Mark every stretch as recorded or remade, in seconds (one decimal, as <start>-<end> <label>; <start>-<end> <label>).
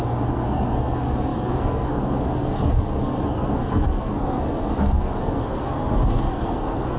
0.0-7.0 remade